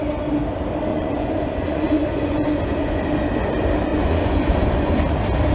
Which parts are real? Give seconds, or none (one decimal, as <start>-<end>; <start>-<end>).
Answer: 0.0-0.9; 3.0-3.9; 5.0-5.5